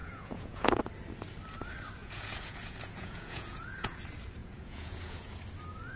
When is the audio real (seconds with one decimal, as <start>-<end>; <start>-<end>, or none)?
0.8-2.0; 4.0-4.4; 5.4-6.0